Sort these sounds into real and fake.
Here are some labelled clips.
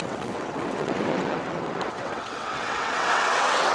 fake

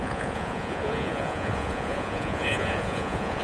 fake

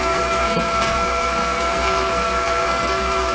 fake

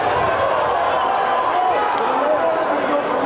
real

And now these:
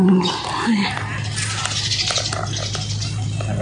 real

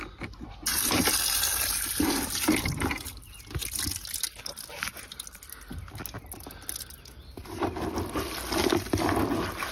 real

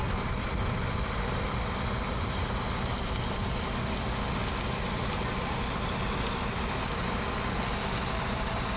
real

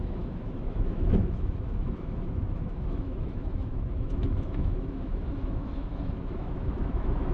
fake